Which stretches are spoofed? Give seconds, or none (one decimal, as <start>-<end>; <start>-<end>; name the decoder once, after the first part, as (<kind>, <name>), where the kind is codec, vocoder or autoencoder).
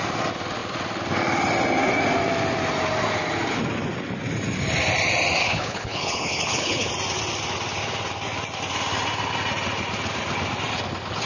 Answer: 5.4-6.9 (codec, HILCodec)